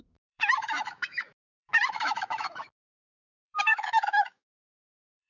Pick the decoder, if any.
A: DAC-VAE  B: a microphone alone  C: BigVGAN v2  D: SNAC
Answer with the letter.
A